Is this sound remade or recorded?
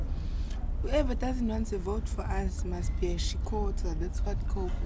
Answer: recorded